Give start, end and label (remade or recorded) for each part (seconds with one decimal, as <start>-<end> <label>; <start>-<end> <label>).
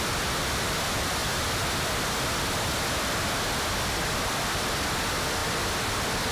0.0-6.3 recorded